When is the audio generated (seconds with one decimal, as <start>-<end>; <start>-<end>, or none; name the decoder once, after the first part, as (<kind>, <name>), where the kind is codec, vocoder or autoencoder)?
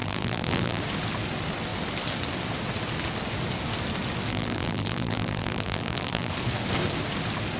0.0-0.8 (vocoder, BigVGAN v2); 4.3-6.3